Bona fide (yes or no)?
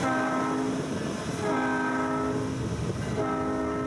yes